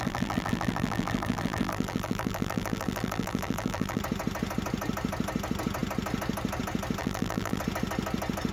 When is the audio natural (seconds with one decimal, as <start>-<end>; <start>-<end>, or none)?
4.0-7.0; 7.6-8.5